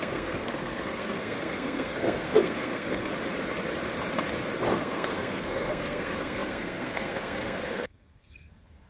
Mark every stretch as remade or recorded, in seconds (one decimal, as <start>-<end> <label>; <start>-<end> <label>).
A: 0.0-3.1 remade; 3.1-4.7 recorded; 4.7-8.9 remade